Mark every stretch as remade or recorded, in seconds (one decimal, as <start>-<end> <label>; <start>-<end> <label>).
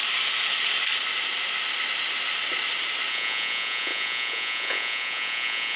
0.0-3.1 recorded; 3.1-5.8 remade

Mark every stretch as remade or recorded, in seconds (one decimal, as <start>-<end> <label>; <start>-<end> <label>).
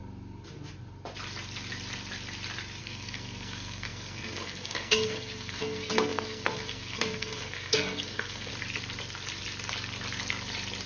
0.0-2.8 recorded; 2.8-8.5 remade; 8.5-10.9 recorded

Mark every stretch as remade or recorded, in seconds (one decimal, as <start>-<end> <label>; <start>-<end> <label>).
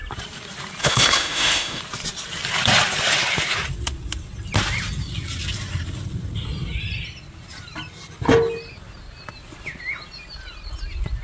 0.0-0.8 recorded; 0.8-1.8 remade; 1.8-11.2 recorded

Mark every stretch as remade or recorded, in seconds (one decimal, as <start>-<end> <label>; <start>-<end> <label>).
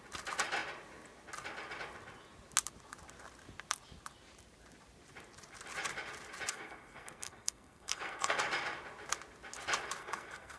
0.0-6.5 recorded; 6.5-8.4 remade; 8.4-10.0 recorded; 10.0-10.6 remade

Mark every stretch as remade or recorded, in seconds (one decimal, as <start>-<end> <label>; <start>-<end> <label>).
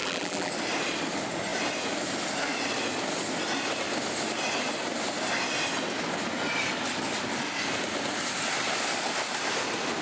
0.0-0.5 remade; 0.5-10.0 recorded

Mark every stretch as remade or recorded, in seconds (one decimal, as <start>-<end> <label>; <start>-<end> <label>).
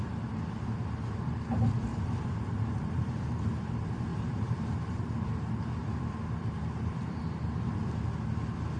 0.0-1.9 recorded; 1.9-3.1 remade; 3.1-4.1 recorded; 4.1-5.3 remade; 5.3-5.8 recorded; 5.8-7.4 remade; 7.4-8.8 recorded